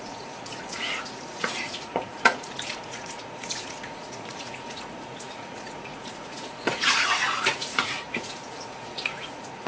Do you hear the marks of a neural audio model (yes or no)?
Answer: yes